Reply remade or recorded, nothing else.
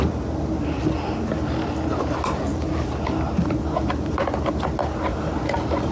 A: recorded